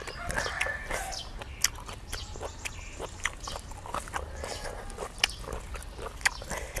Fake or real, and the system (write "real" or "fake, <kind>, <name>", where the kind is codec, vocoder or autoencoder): real